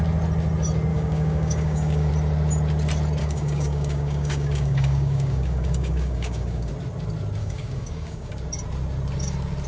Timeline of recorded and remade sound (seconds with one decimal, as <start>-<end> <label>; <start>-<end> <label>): 0.0-0.9 recorded; 0.9-2.1 remade; 2.1-3.2 recorded; 3.2-6.7 remade; 6.7-7.4 recorded; 7.4-8.3 remade; 8.3-9.7 recorded